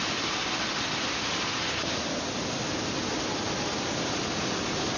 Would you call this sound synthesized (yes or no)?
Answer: no